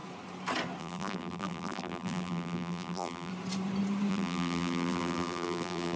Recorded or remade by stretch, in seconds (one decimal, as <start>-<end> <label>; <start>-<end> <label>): 0.0-0.8 recorded; 0.8-3.3 remade; 3.3-4.1 recorded; 4.1-6.0 remade